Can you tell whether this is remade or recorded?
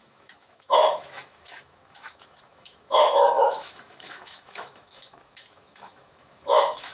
remade